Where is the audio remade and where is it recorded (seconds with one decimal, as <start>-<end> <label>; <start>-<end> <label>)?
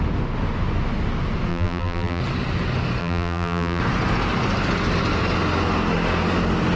0.0-1.5 recorded; 1.5-2.2 remade; 2.2-3.0 recorded; 3.0-3.8 remade; 3.8-6.8 recorded